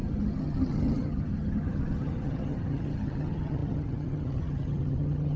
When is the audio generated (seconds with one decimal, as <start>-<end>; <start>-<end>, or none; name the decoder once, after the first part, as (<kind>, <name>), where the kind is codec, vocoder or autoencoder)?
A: 0.0-5.4 (vocoder, HiFi-GAN)